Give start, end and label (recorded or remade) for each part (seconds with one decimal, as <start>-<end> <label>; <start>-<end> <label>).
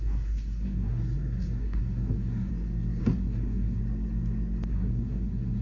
0.0-2.5 remade; 2.5-3.0 recorded; 3.0-3.8 remade; 3.8-4.7 recorded; 4.7-5.6 remade